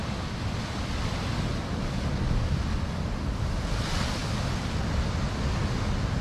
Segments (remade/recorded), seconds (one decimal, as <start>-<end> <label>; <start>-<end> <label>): 0.0-6.2 recorded